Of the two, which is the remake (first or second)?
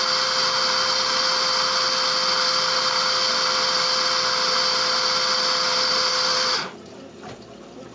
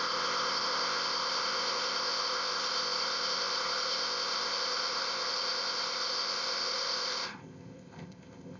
second